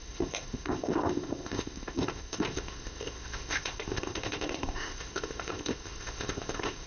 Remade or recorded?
remade